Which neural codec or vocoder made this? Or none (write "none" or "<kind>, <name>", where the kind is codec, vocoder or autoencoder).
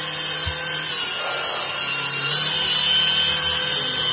none